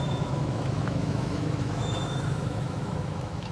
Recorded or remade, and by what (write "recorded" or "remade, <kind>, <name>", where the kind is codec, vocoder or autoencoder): remade, autoencoder, DAC-VAE